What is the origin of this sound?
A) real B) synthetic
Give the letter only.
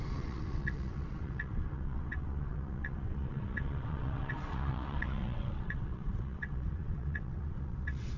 B